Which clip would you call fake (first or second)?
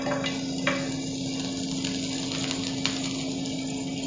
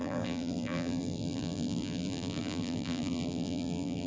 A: second